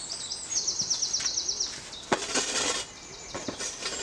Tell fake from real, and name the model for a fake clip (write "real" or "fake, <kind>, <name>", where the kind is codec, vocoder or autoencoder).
real